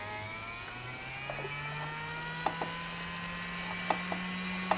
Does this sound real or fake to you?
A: real